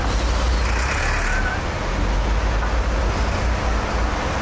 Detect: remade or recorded recorded